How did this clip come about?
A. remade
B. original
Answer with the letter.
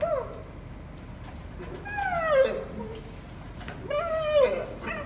B